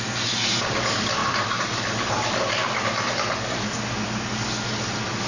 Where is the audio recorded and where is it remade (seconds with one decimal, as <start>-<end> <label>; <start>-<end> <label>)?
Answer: 0.0-5.3 recorded